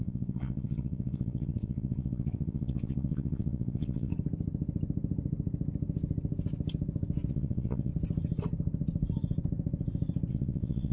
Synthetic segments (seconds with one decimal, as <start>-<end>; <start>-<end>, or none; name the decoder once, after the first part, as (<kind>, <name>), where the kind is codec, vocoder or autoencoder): 0.0-4.1 (vocoder, WaveNeXt); 7.3-7.9; 10.3-10.9